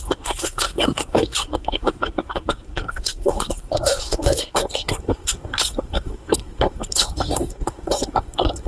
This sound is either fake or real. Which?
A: fake